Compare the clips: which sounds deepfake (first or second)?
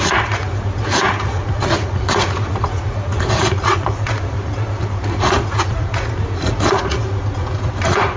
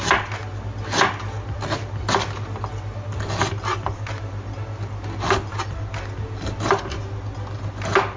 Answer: first